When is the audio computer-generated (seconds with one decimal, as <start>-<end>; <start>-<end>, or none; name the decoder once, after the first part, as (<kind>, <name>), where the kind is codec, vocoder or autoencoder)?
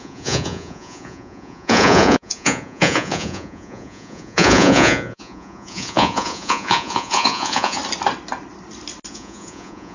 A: 0.0-7.8 (vocoder, Vocos); 9.1-9.9